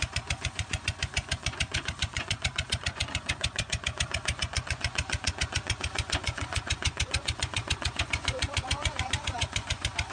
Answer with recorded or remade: remade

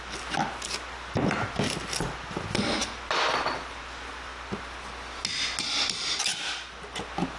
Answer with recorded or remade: recorded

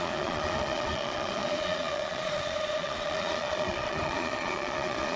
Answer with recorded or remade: remade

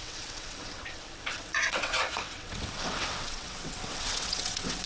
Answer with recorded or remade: remade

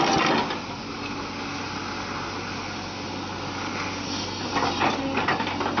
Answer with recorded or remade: recorded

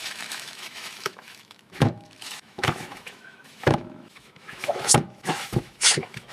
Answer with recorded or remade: remade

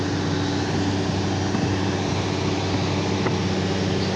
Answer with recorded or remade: recorded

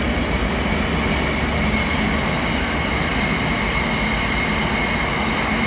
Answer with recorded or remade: recorded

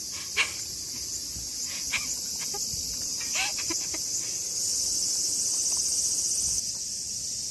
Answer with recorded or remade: recorded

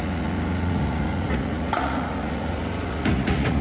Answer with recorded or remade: remade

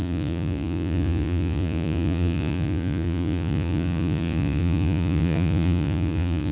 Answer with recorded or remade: remade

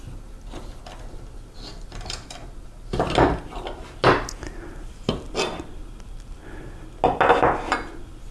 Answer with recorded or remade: recorded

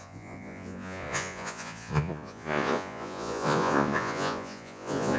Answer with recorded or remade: remade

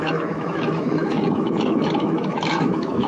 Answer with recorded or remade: remade